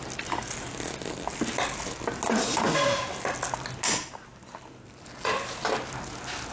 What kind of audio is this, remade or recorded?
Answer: recorded